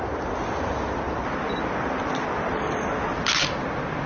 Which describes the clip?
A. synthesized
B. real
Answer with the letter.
B